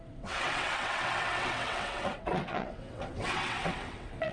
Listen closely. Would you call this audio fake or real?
fake